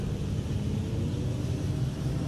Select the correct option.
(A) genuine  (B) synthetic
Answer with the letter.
A